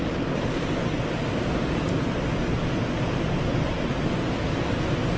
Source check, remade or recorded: recorded